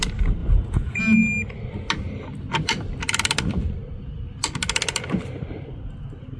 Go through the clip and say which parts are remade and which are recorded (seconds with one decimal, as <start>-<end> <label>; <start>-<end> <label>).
0.0-0.4 recorded; 0.4-1.0 remade; 1.0-6.4 recorded